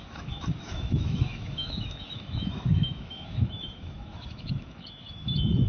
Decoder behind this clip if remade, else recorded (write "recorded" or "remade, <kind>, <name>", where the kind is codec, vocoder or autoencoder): remade, autoencoder, DAC-VAE